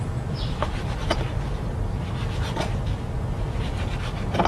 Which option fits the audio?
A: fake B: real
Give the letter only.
B